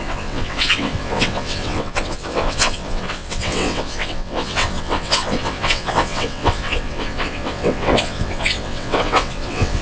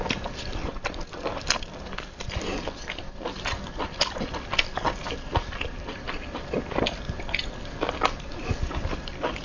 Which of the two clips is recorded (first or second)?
second